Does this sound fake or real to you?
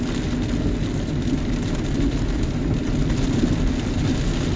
real